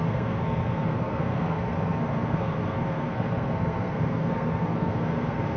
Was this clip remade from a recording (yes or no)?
yes